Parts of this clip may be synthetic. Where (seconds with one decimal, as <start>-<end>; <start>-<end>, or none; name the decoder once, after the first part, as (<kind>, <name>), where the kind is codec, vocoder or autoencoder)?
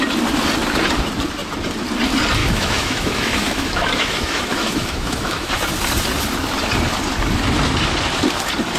2.4-5.7 (autoencoder, DAC-VAE)